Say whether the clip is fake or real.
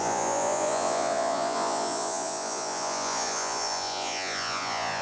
fake